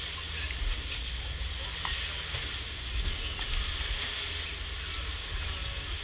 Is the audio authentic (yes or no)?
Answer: yes